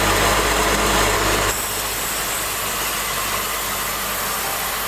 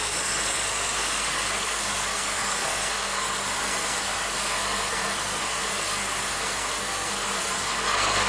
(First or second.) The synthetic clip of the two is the second